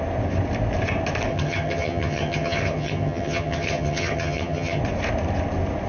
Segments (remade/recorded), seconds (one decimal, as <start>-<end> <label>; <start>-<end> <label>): 0.0-1.3 recorded; 1.3-4.8 remade; 4.8-5.9 recorded